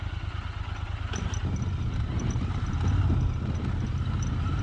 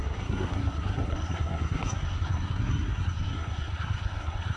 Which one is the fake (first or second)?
second